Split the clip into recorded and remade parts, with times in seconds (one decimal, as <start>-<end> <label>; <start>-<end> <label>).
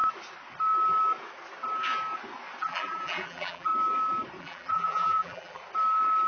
0.0-2.6 recorded; 2.6-3.7 remade; 3.7-4.4 recorded; 4.4-5.6 remade; 5.6-6.3 recorded